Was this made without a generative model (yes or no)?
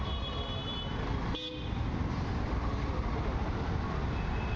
yes